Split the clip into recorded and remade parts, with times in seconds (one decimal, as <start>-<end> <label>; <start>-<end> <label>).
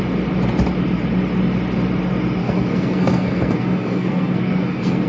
0.0-2.4 recorded; 2.4-5.1 remade